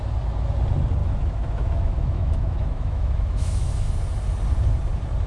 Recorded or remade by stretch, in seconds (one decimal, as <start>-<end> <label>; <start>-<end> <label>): 0.0-1.0 recorded; 1.0-3.9 remade; 3.9-5.3 recorded